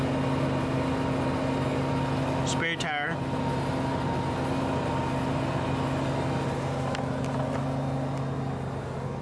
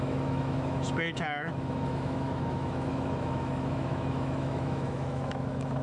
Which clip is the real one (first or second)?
first